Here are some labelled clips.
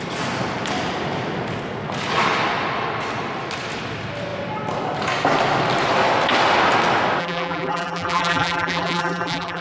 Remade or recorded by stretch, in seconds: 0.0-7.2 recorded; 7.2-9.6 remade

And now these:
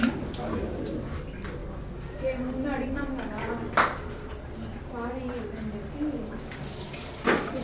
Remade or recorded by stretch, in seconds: 0.0-7.6 recorded

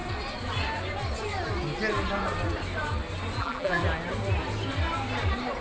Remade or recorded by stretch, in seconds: 0.0-3.4 recorded; 3.4-3.8 remade; 3.8-5.6 recorded

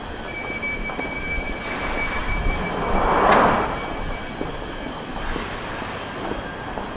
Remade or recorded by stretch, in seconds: 0.0-0.4 recorded; 0.4-4.5 remade; 4.5-7.0 recorded

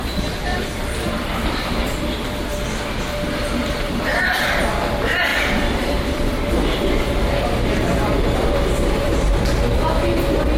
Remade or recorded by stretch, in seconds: 0.0-0.5 recorded; 0.5-2.4 remade; 2.4-3.6 recorded; 3.6-4.6 remade; 4.6-5.3 recorded; 5.3-9.3 remade; 9.3-10.6 recorded